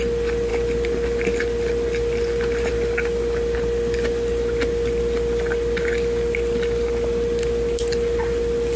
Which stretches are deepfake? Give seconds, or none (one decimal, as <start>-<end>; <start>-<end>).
none